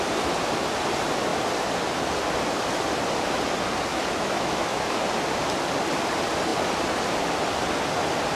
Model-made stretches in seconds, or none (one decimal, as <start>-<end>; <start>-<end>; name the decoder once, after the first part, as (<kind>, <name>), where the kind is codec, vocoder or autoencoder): 3.9-5.0 (autoencoder, DAC-VAE)